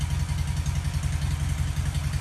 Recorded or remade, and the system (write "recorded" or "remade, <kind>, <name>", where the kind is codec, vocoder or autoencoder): recorded